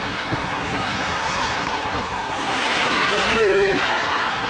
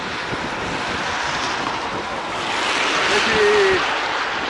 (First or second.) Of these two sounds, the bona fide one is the second